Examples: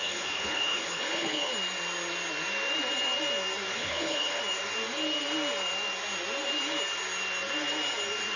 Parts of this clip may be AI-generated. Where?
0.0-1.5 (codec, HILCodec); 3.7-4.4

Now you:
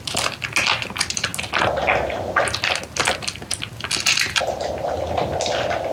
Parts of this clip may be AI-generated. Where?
none